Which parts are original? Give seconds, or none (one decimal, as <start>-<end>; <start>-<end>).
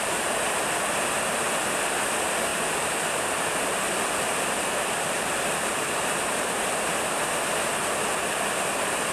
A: 0.0-2.5; 7.3-9.1